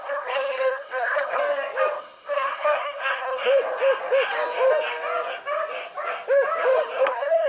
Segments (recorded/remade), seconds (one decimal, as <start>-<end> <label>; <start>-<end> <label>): 0.0-1.4 remade; 1.4-2.0 recorded; 2.0-3.5 remade; 3.5-7.0 recorded; 7.0-7.5 remade